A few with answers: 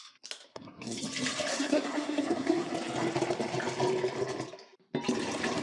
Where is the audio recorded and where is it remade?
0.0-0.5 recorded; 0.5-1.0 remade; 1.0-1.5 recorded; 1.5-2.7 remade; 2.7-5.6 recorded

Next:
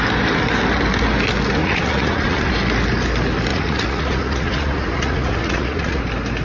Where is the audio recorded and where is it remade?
0.0-1.6 recorded; 1.6-2.5 remade; 2.5-3.5 recorded; 3.5-6.0 remade; 6.0-6.4 recorded

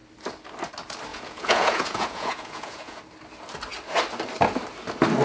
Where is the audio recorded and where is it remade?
0.0-1.1 recorded; 1.1-3.0 remade; 3.0-5.2 recorded

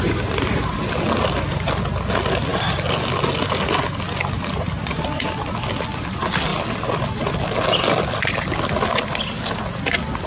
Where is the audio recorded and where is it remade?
0.0-10.3 recorded

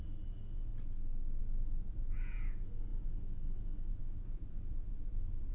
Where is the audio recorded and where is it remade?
0.0-0.7 remade; 0.7-1.4 recorded; 1.4-5.5 remade

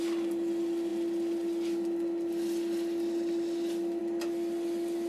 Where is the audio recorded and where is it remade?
0.0-5.1 recorded

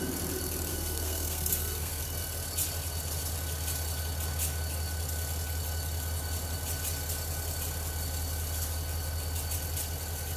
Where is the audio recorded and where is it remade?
0.0-0.7 recorded; 0.7-2.0 remade; 2.0-10.4 recorded